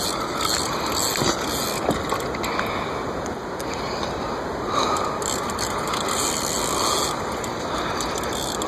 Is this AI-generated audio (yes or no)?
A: no